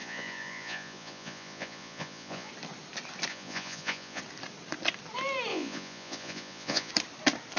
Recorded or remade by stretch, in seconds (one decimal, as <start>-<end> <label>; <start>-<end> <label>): 0.0-2.5 remade; 2.5-3.3 recorded; 3.3-4.2 remade; 4.2-5.5 recorded; 5.5-6.9 remade; 6.9-7.6 recorded